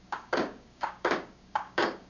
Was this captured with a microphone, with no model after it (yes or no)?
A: no